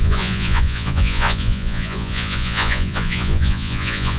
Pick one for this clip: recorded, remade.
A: remade